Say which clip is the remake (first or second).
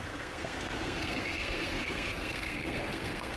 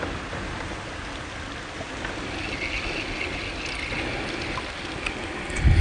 first